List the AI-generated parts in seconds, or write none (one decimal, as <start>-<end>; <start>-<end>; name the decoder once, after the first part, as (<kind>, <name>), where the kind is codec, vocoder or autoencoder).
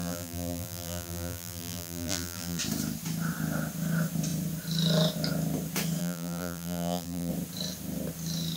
0.0-2.6 (vocoder, BigVGAN v2); 6.0-7.3